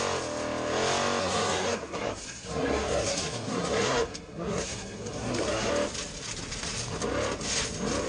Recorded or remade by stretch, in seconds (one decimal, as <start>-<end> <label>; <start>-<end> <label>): 0.0-1.2 recorded; 1.2-5.7 remade; 5.7-8.1 recorded